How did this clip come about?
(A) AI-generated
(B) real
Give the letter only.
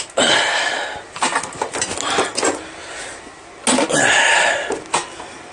B